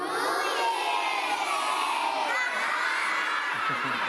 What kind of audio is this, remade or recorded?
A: recorded